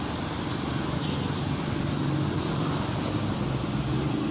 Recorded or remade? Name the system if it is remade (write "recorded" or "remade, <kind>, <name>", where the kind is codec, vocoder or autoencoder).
recorded